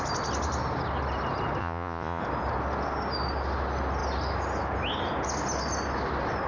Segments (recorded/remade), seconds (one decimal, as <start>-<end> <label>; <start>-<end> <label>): 0.0-1.6 recorded; 1.6-2.2 remade; 2.2-6.5 recorded